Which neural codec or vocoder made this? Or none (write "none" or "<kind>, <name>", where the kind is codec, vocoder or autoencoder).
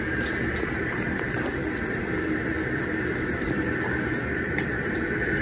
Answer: vocoder, BigVGAN v2